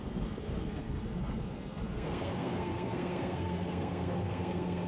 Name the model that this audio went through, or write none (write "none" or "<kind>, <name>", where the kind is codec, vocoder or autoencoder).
codec, SNAC